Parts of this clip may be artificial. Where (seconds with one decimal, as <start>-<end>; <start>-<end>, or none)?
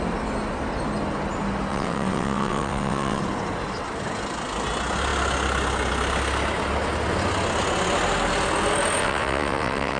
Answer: 1.7-3.2; 9.0-10.0